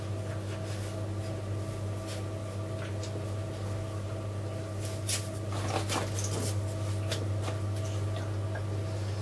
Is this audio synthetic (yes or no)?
no